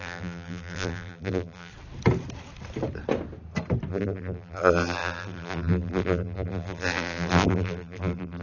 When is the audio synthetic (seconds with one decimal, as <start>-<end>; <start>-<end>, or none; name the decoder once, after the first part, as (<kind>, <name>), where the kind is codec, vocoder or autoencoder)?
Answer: 0.0-1.7 (vocoder, BigVGAN v2); 3.9-8.4